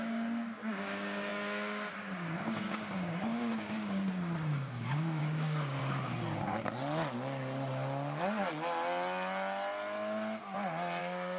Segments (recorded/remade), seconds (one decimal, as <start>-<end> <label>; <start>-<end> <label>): 0.0-5.8 remade; 5.8-11.0 recorded; 11.0-11.4 remade